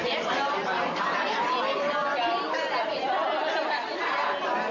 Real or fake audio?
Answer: real